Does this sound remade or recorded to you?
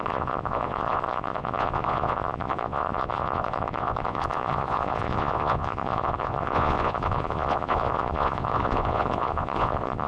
remade